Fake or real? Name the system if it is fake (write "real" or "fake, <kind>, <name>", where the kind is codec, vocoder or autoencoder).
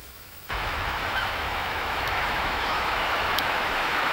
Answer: fake, autoencoder, DAC-VAE